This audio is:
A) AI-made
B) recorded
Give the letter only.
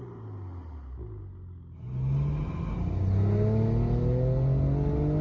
B